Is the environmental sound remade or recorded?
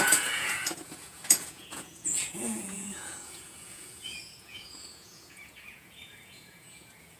remade